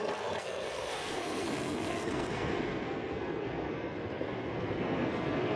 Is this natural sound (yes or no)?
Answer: no